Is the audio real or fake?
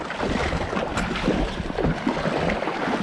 real